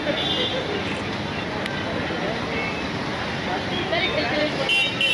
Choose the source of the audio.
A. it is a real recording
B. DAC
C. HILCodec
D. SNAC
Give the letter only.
A